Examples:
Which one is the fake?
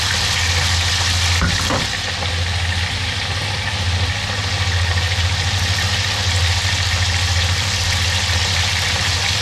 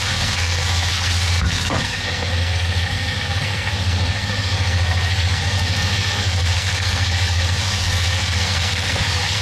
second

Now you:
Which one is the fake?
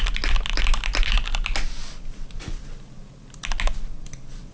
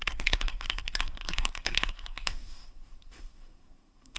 second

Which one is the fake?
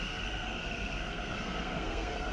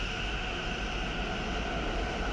first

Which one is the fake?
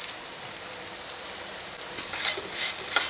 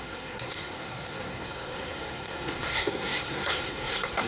second